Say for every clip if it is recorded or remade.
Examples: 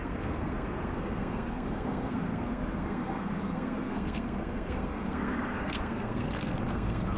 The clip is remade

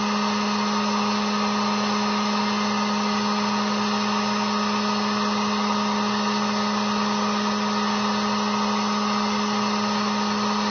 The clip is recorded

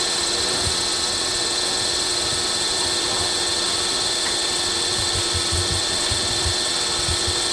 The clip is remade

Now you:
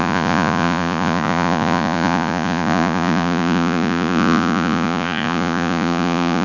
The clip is remade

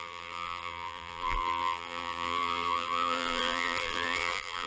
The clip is remade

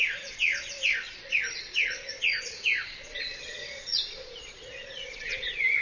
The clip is remade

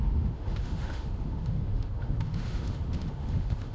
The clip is remade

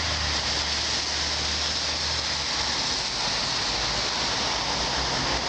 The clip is recorded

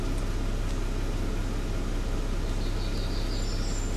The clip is recorded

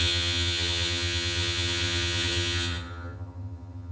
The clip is remade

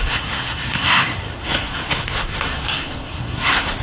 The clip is remade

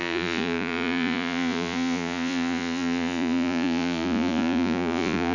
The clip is remade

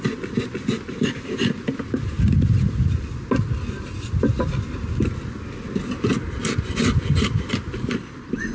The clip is recorded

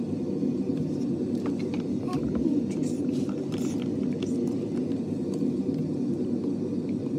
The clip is recorded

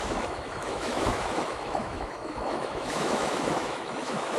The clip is remade